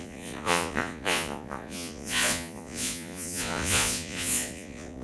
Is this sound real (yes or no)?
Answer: no